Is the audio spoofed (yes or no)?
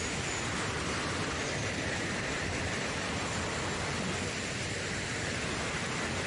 yes